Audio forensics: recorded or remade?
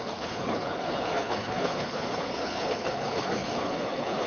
remade